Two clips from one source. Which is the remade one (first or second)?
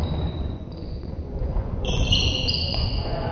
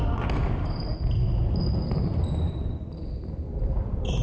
first